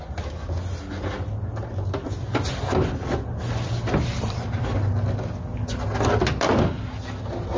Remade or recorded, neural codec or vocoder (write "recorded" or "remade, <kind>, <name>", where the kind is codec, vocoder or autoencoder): recorded